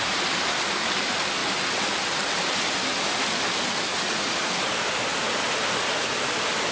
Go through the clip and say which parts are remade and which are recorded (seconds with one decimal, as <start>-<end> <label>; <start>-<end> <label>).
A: 0.0-3.9 recorded; 3.9-4.5 remade; 4.5-6.7 recorded